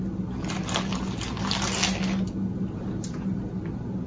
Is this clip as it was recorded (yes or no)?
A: yes